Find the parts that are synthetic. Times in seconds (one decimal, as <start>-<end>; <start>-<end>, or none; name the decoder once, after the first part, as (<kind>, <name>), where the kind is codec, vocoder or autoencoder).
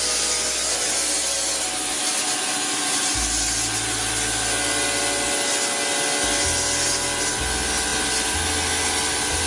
none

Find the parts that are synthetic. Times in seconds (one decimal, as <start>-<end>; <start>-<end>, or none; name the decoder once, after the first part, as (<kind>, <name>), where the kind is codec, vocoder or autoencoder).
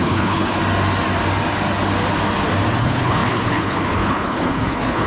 0.0-0.6 (codec, HILCodec); 2.8-5.1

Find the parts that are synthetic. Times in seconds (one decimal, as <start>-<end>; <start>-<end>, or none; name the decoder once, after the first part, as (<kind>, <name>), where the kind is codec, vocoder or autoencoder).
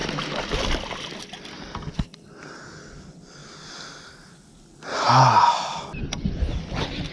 none